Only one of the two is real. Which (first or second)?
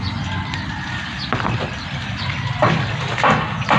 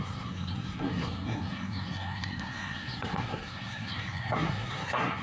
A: first